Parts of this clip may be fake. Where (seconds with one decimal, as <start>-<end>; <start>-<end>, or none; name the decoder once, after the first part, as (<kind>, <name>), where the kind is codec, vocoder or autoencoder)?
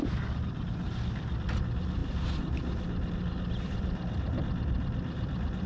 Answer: none